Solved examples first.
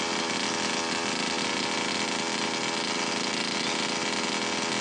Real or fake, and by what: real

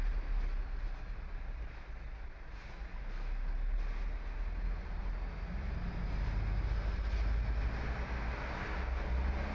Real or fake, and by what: real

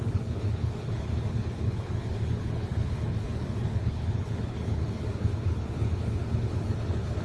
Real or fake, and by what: fake, codec, HILCodec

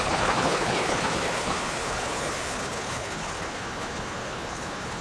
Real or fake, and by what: fake, codec, HILCodec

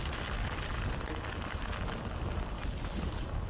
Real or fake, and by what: real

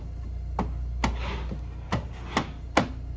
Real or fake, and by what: real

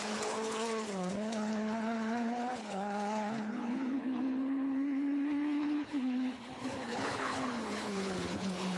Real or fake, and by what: fake, codec, HILCodec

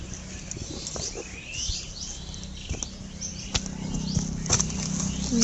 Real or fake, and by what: real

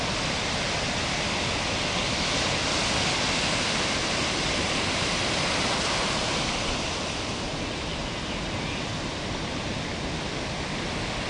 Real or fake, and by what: real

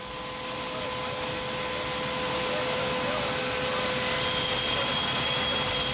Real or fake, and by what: real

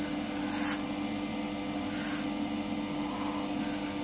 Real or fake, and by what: real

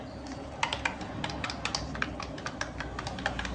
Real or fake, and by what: real